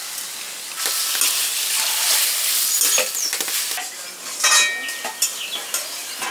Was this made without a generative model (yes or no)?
yes